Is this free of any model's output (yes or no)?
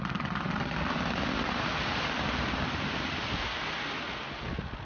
yes